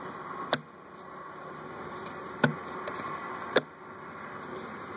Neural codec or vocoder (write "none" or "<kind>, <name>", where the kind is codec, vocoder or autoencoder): none